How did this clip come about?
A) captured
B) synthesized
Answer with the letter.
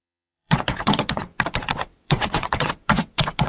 B